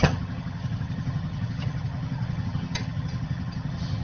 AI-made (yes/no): yes